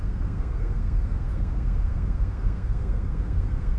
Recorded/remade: remade